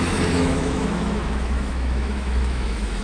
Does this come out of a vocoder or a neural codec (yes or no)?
yes